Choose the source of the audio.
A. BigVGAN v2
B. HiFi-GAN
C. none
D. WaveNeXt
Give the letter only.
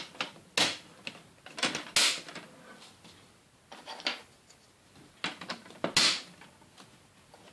C